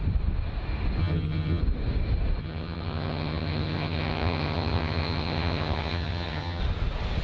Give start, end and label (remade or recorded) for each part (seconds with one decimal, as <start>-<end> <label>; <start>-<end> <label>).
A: 0.0-1.0 recorded; 1.0-1.6 remade; 1.6-2.4 recorded; 2.4-6.6 remade; 6.6-7.2 recorded